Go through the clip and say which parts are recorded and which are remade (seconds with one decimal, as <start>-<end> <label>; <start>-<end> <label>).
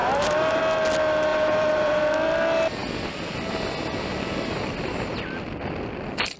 0.0-0.6 remade; 0.6-1.3 recorded; 1.3-2.0 remade; 2.0-6.4 recorded